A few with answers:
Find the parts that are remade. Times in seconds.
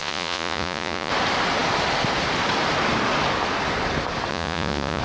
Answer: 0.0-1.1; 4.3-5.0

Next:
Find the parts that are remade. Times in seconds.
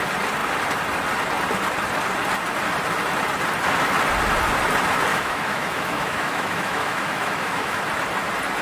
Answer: 5.1-7.8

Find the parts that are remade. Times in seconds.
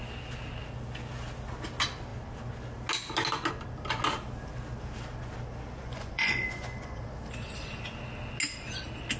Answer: 5.8-7.0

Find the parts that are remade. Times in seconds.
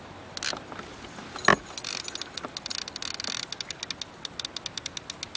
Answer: none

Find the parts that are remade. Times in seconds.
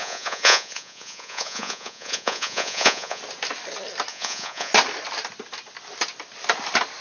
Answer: 0.0-3.2; 4.1-4.7